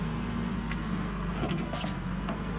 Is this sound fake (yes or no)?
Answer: yes